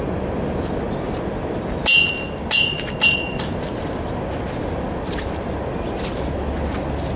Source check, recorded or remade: recorded